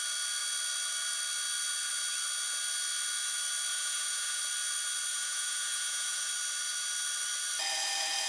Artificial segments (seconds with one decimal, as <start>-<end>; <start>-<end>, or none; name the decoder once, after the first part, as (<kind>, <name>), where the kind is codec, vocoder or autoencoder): 3.7-4.4 (vocoder, Vocos); 5.1-6.3